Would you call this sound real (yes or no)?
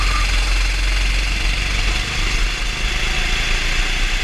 yes